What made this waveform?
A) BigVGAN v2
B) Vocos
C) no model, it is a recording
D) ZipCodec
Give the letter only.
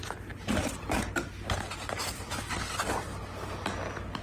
C